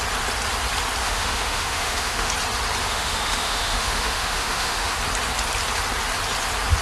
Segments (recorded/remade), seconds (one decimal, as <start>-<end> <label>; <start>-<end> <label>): 0.0-1.0 recorded; 1.0-2.3 remade; 2.3-2.8 recorded; 2.8-5.0 remade; 5.0-6.8 recorded